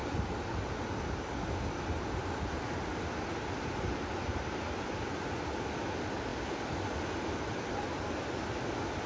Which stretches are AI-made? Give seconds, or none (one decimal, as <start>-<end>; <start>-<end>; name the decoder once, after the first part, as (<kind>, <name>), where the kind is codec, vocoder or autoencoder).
none